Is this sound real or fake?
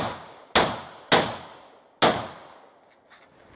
real